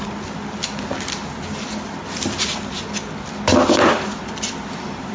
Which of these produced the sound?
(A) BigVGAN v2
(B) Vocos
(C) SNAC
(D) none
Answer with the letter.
D